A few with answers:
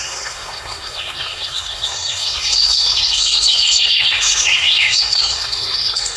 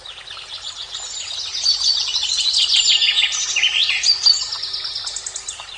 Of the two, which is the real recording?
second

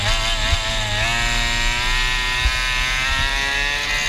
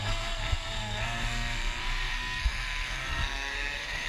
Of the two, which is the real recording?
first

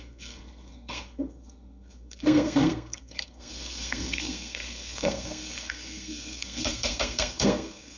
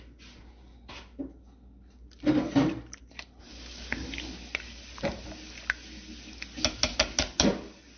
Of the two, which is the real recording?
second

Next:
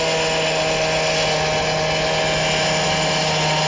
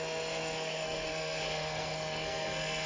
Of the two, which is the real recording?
first